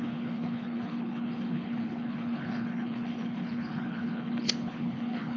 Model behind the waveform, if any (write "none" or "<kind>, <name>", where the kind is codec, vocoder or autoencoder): codec, HILCodec